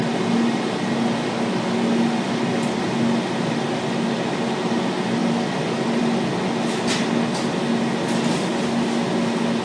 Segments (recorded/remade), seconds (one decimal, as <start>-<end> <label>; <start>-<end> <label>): 0.0-9.6 recorded

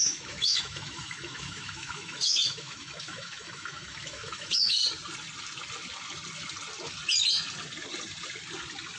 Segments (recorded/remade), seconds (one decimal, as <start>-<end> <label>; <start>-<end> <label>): 0.0-4.8 remade; 4.8-9.0 recorded

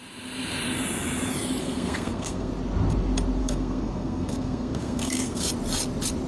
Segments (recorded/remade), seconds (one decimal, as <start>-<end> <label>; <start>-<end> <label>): 0.0-1.6 recorded; 1.6-2.5 remade; 2.5-3.4 recorded; 3.4-5.5 remade; 5.5-6.3 recorded

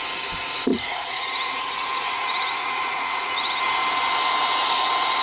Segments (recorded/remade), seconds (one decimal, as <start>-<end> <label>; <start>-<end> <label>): 0.0-0.7 recorded; 0.7-3.6 remade; 3.6-5.2 recorded

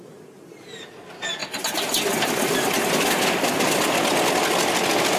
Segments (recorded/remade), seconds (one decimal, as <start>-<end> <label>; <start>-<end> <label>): 0.0-5.2 recorded